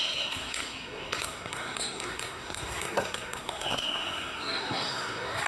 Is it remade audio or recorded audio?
remade